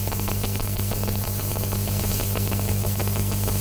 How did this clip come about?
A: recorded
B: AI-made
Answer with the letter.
B